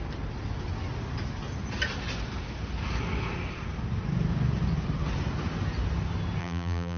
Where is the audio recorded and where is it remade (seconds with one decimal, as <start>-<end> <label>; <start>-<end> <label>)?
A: 0.0-6.4 recorded; 6.4-7.0 remade